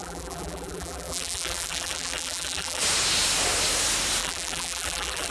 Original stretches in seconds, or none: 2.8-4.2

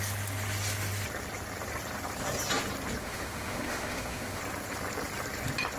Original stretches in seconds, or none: 0.0-3.0; 4.4-5.8

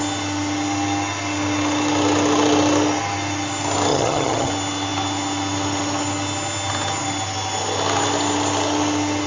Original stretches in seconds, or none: 0.0-3.9; 4.5-9.3

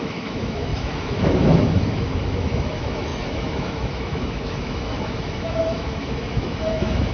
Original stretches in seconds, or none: none

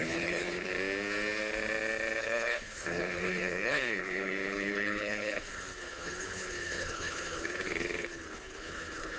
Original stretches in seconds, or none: 0.7-2.2

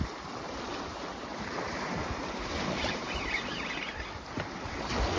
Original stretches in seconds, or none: 0.0-0.7; 3.8-5.2

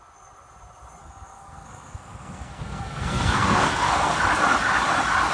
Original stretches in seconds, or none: 0.0-1.0; 4.2-5.3

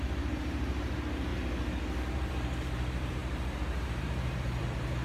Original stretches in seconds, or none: 1.3-2.0